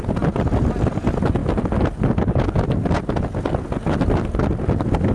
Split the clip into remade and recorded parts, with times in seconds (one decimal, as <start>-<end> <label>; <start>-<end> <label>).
0.0-5.1 recorded